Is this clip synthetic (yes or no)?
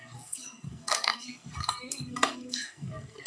yes